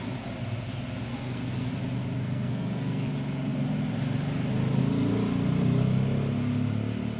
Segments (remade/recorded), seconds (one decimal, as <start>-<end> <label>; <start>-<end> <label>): 0.0-1.1 recorded; 1.1-1.7 remade; 1.7-2.2 recorded; 2.2-3.1 remade; 3.1-7.2 recorded